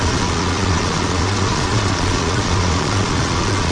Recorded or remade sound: remade